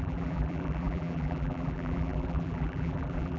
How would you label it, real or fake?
fake